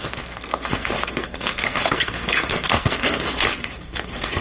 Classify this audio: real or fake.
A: fake